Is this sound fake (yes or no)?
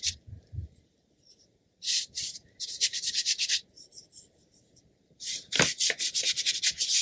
yes